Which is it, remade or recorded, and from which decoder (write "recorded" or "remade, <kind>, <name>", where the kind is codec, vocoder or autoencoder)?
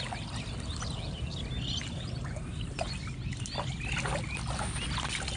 recorded